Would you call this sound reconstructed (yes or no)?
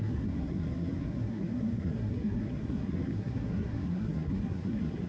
yes